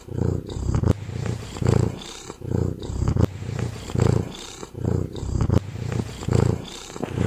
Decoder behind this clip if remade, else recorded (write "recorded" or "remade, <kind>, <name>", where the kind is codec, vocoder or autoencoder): remade, vocoder, BigVGAN v2